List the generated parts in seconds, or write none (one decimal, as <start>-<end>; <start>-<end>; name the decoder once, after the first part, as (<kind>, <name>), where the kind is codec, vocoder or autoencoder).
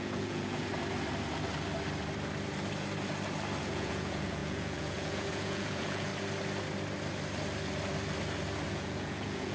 0.0-0.7 (vocoder, Vocos); 3.6-6.1; 8.7-9.5